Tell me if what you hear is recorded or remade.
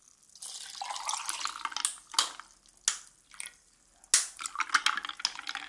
recorded